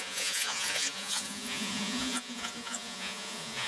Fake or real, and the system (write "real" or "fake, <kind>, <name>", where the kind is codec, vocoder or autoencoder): fake, vocoder, Vocos